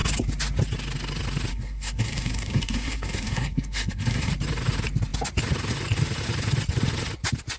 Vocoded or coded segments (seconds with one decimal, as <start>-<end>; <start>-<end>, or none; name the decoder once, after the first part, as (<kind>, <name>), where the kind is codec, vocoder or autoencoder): 1.5-4.3 (codec, SNAC)